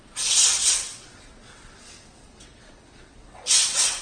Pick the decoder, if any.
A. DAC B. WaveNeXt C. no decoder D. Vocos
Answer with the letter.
B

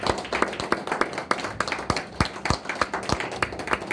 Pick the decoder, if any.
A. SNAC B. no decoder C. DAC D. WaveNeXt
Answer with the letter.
B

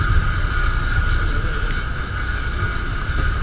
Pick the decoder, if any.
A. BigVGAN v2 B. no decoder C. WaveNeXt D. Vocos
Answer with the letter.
B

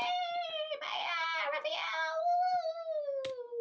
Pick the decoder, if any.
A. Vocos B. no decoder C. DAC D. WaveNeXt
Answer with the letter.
B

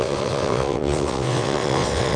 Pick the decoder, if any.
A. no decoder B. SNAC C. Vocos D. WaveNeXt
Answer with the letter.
D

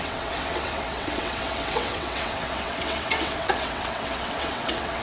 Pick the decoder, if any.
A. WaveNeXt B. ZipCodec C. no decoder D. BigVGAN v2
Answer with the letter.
A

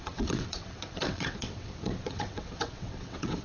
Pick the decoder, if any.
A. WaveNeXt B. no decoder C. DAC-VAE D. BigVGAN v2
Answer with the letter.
A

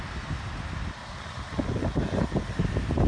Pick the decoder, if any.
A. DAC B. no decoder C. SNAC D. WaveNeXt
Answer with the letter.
B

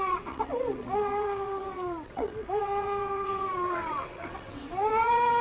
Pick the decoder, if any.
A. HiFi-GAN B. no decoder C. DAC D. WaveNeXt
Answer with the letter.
D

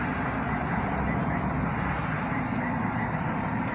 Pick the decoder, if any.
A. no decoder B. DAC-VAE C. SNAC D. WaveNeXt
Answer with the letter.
A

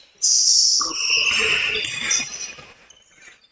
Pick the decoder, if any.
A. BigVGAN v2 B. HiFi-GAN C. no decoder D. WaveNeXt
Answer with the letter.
C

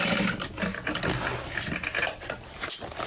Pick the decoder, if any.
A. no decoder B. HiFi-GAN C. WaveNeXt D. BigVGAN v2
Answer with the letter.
A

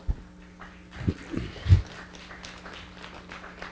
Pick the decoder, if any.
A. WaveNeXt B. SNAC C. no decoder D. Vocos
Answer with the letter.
C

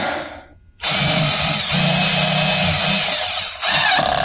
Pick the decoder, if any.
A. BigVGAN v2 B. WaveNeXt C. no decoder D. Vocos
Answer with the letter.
C